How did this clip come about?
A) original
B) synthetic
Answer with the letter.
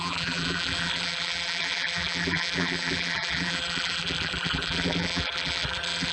B